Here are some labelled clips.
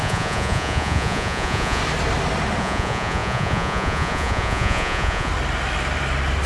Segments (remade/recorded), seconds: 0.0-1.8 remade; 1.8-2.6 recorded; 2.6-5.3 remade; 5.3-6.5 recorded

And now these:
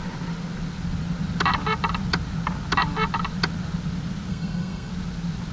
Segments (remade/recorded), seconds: 0.0-4.3 recorded; 4.3-4.9 remade; 4.9-5.5 recorded

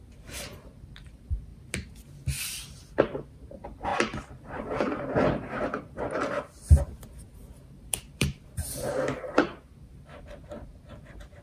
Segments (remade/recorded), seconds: 0.0-1.5 remade; 1.5-3.3 recorded; 3.3-11.4 remade

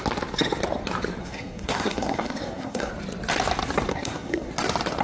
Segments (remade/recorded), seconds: 0.0-1.2 recorded; 1.2-2.9 remade; 2.9-3.9 recorded; 3.9-4.5 remade; 4.5-5.0 recorded